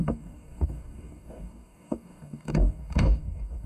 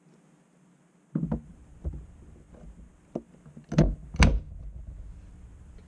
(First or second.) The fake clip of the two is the first